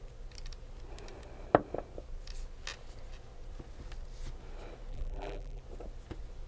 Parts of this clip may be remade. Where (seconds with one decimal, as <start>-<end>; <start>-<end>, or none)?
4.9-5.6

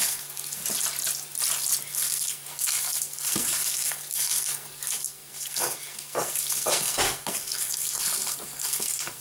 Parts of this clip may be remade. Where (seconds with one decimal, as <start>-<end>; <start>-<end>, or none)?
0.0-0.6; 1.9-9.2

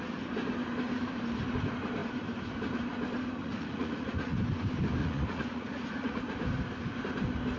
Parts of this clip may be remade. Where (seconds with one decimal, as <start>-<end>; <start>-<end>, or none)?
3.4-4.4; 5.0-6.2

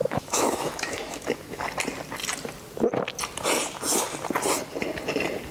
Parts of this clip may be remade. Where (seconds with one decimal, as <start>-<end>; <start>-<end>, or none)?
0.0-1.6

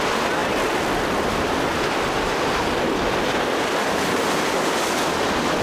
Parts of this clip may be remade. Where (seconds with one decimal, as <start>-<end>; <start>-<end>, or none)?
none

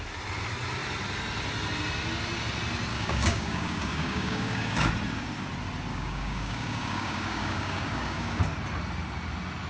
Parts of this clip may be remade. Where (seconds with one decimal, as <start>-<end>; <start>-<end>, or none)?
2.9-4.9; 5.9-8.4

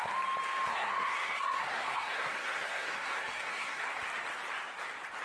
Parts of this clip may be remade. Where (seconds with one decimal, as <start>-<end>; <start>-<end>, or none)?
0.7-3.8

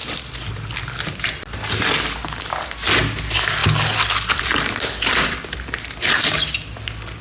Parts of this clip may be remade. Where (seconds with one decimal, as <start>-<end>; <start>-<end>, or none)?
none